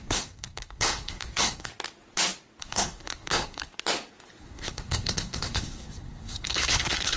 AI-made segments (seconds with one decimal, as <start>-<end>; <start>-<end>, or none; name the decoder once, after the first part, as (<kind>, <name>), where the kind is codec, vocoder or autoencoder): 0.0-1.7 (codec, SNAC); 2.6-3.7; 4.4-7.2